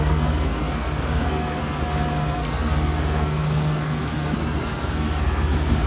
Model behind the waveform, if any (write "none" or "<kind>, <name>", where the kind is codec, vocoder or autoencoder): codec, SNAC